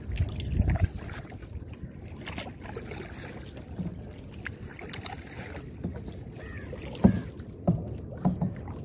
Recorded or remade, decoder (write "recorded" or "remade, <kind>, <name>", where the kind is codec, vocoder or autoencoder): recorded